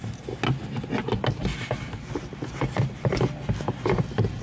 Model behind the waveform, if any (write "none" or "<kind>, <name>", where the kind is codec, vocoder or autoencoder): none